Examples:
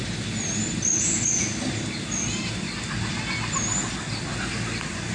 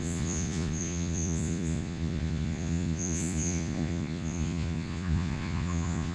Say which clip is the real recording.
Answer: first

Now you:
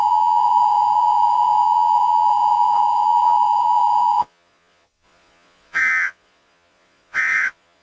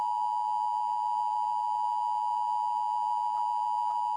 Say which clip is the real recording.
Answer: second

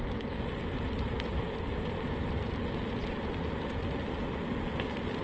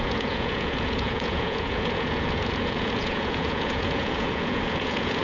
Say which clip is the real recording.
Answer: first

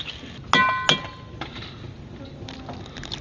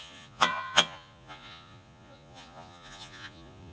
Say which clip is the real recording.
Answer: first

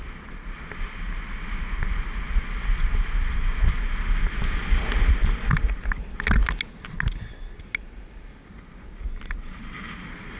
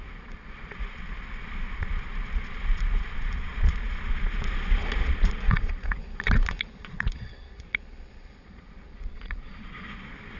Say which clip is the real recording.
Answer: first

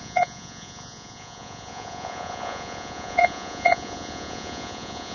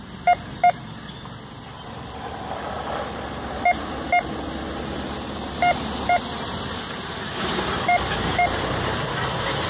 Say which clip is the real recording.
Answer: second